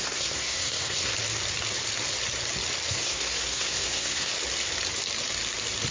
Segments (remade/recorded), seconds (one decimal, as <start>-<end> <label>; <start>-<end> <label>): 0.0-1.1 remade; 1.1-2.9 recorded; 2.9-4.3 remade; 4.3-5.9 recorded